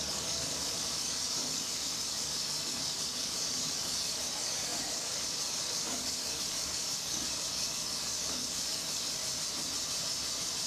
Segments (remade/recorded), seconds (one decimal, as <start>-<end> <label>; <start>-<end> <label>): 0.0-9.2 remade; 9.2-10.7 recorded